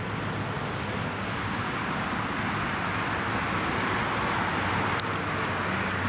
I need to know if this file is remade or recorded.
recorded